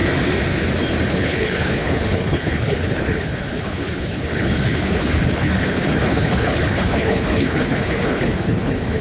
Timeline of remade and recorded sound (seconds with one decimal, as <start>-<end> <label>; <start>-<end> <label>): 0.0-1.1 recorded; 1.1-9.0 remade